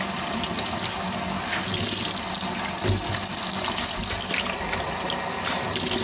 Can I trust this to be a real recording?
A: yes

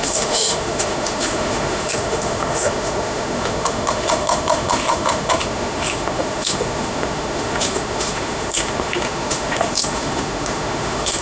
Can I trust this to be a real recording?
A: no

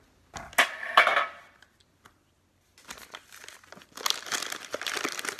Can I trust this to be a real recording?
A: yes